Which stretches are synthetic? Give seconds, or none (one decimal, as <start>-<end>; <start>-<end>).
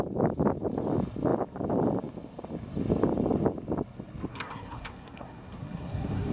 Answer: 4.3-6.3